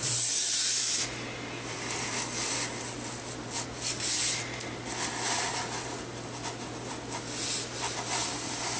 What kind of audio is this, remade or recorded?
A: recorded